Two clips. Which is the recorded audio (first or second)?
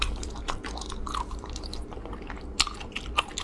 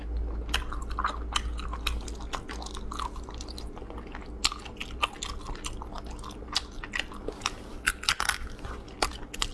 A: second